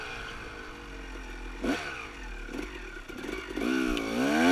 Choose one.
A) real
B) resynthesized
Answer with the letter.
A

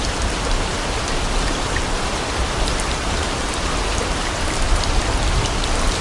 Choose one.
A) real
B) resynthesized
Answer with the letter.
B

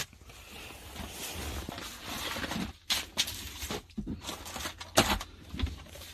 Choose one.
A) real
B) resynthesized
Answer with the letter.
A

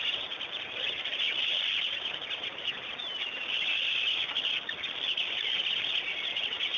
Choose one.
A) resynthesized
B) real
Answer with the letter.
B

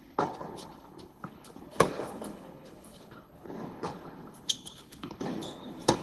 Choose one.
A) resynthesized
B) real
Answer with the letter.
A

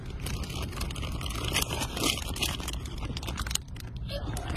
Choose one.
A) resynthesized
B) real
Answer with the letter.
B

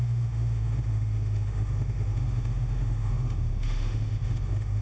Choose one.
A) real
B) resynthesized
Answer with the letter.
B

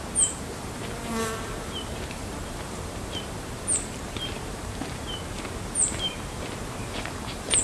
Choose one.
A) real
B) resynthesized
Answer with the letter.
B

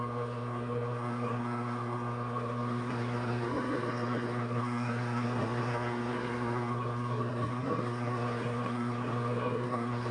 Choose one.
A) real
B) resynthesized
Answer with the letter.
B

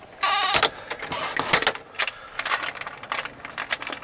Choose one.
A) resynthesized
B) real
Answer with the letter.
B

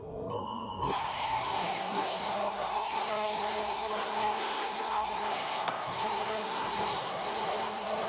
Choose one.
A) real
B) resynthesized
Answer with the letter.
B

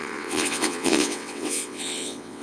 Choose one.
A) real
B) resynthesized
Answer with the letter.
B